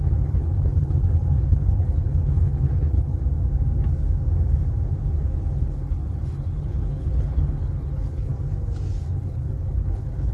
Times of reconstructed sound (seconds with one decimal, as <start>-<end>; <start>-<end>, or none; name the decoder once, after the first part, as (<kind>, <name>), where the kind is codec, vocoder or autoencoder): 0.0-3.2 (codec, HILCodec); 5.5-8.3; 9.0-10.3